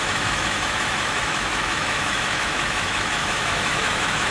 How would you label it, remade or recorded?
remade